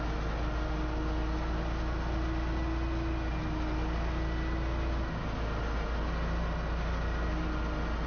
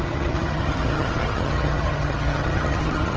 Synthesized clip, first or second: second